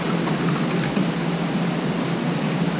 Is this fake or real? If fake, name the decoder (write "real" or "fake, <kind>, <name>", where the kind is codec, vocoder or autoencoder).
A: real